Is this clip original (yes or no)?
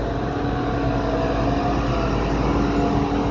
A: yes